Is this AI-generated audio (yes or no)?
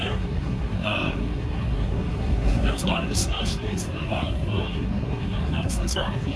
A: yes